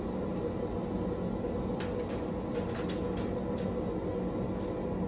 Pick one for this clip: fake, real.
real